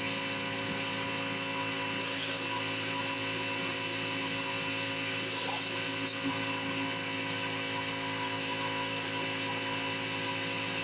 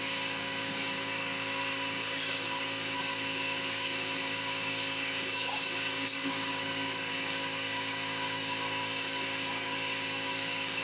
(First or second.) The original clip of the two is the first